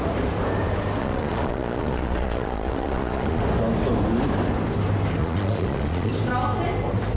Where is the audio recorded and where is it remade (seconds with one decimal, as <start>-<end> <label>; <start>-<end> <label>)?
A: 0.0-1.0 recorded; 1.0-3.4 remade; 3.4-5.2 recorded; 5.2-6.1 remade; 6.1-7.2 recorded